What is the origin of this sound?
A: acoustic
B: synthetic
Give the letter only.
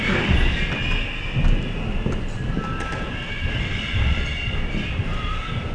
A